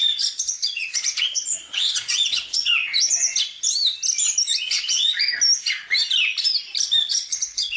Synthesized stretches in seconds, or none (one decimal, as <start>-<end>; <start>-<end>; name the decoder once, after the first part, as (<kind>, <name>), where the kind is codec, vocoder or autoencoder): 0.0-2.7 (vocoder, Vocos); 4.5-5.3; 7.1-7.8